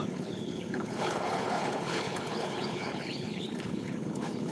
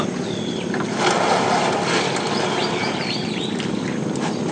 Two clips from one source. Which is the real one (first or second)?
second